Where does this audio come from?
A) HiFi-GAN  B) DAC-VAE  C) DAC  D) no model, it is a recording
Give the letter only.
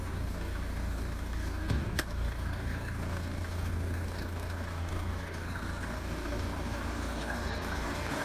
C